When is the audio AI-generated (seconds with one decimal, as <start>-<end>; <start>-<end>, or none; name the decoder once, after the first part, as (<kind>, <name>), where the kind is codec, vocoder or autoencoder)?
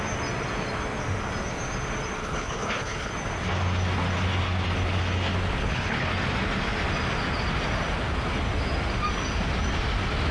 2.2-3.1 (codec, HILCodec); 5.6-6.1